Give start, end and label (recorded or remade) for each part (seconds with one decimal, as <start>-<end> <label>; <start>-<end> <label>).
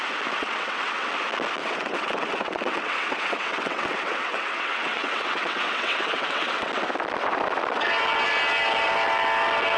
0.0-0.4 recorded; 0.4-1.1 remade; 1.1-1.6 recorded; 1.6-6.7 remade; 6.7-9.8 recorded